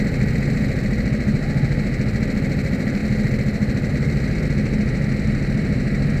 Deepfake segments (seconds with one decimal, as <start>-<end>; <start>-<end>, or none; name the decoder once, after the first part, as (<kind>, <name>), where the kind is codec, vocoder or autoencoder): none